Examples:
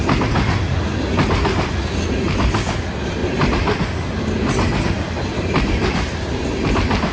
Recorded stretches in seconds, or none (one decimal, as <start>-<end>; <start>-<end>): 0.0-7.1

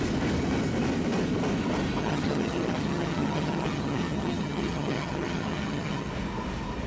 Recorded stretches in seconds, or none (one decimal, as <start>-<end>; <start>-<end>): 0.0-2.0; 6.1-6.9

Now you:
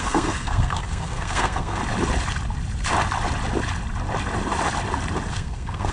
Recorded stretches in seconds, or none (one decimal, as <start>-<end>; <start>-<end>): 1.8-5.3

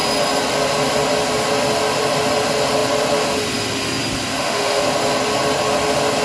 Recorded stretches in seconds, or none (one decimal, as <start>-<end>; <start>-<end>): 0.0-4.3; 4.9-6.2

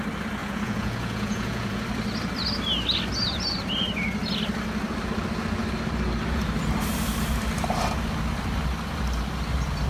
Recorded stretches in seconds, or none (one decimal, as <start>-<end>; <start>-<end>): 0.0-0.4; 1.8-9.9

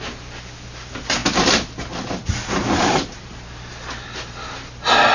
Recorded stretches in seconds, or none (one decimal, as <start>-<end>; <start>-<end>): 0.0-5.1

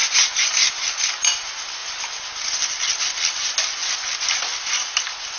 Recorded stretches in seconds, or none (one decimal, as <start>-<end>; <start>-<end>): 0.0-5.4

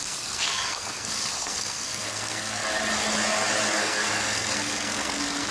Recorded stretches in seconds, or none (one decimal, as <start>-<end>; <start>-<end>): 2.6-3.8